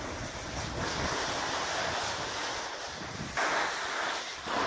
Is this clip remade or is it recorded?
remade